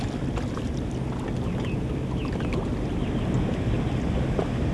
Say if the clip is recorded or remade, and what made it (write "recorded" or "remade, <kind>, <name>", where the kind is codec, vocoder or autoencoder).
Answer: recorded